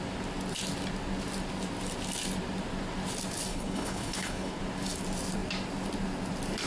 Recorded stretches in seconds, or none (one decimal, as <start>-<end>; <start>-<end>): 0.0-3.5; 4.6-6.7